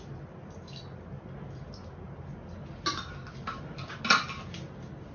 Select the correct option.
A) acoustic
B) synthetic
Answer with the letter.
A